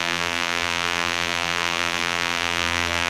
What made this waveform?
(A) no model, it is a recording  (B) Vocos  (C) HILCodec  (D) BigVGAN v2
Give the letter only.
D